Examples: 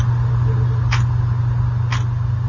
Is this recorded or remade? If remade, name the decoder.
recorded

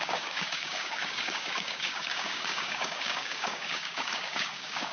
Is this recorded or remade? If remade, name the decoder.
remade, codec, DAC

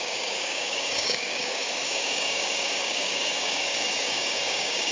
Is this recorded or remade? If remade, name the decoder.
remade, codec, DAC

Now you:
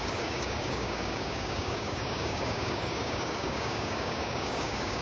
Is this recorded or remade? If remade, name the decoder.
remade, codec, DAC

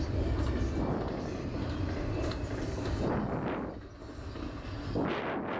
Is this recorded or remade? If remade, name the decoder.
recorded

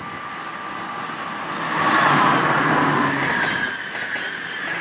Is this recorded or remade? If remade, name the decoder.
recorded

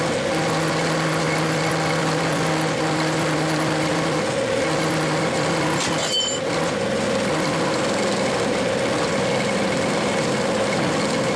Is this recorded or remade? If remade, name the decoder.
recorded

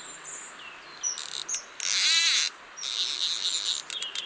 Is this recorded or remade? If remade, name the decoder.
recorded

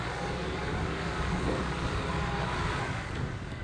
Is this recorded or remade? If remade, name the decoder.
remade, codec, DAC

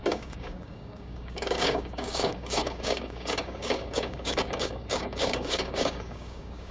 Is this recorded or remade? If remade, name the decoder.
remade, codec, DAC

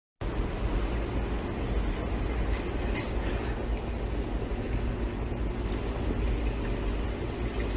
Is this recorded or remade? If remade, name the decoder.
recorded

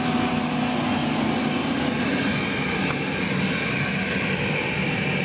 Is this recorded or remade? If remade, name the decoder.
recorded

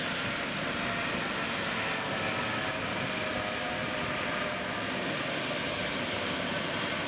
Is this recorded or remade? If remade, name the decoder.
recorded